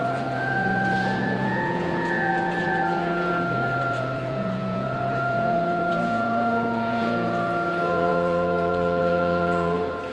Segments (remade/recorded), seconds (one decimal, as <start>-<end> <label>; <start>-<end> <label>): 0.0-10.1 remade